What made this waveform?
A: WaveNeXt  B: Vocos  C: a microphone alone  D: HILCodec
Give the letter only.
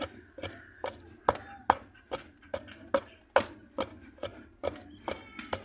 C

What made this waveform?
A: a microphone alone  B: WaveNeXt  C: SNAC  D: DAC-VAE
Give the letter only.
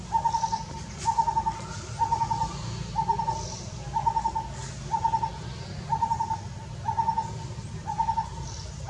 A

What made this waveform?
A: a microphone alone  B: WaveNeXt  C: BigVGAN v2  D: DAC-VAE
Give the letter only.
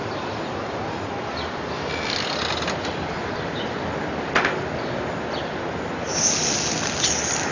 A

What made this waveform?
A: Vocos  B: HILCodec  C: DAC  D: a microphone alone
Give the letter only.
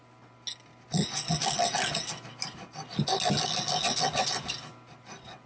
D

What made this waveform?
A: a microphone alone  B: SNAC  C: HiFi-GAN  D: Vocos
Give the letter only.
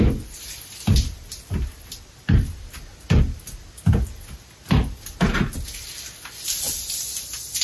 A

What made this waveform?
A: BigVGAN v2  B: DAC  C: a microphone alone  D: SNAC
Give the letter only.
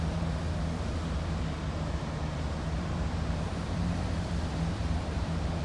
A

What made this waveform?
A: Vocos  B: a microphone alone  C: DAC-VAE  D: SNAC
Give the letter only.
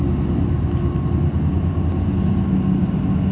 B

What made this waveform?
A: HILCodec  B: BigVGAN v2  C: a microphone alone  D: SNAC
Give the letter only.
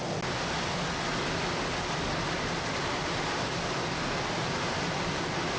C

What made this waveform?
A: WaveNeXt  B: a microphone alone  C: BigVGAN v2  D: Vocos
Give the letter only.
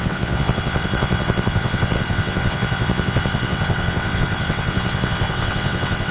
A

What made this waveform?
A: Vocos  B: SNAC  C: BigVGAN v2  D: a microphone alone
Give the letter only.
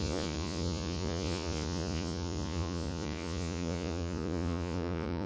A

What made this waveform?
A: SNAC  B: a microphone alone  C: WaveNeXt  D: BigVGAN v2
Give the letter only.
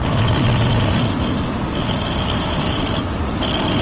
B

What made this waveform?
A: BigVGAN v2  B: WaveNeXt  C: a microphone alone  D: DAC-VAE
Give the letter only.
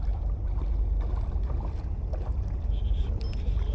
C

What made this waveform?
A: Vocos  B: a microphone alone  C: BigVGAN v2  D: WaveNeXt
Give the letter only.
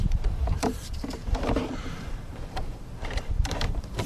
C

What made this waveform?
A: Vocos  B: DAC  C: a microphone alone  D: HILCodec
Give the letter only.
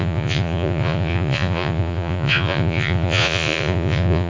A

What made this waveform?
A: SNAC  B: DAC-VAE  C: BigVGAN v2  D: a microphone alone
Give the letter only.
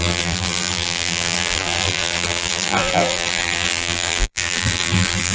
C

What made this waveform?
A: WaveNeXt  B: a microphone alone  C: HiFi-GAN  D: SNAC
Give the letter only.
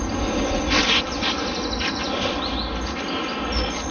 B